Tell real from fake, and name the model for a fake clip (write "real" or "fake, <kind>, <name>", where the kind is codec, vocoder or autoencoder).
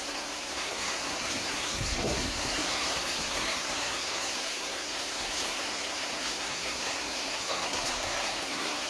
fake, codec, SNAC